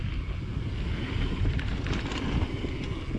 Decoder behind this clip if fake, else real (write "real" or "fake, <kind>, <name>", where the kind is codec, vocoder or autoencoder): real